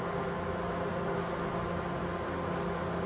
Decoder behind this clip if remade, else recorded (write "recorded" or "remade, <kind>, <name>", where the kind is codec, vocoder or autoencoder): recorded